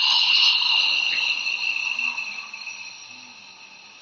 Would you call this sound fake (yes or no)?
no